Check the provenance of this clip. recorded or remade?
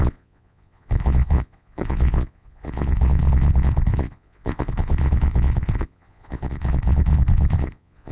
remade